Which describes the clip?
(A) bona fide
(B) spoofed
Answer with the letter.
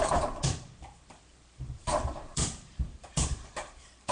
B